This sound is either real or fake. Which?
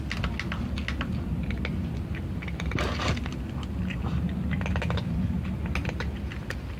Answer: real